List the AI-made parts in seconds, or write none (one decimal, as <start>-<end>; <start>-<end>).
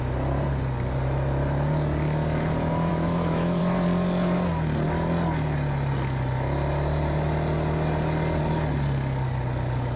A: 2.9-3.6